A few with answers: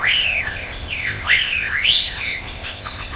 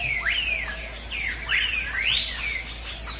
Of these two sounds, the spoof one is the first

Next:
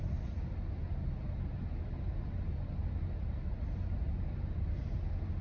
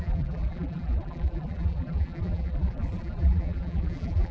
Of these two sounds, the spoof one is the second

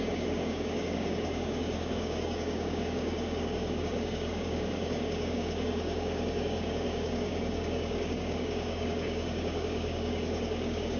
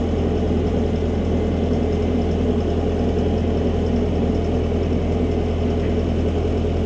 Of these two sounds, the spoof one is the first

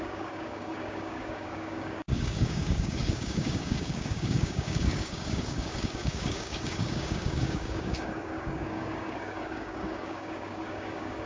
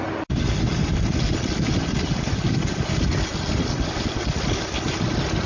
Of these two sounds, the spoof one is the first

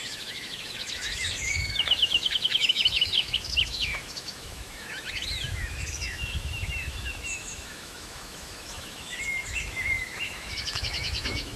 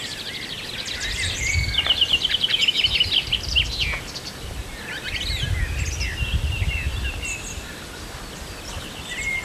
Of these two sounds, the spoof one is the first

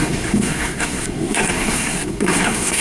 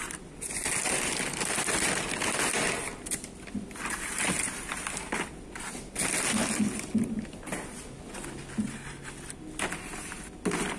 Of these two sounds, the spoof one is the first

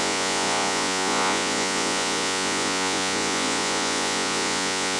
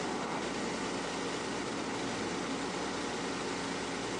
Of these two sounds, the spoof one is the first